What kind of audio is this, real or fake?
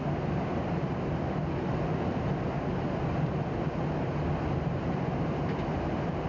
real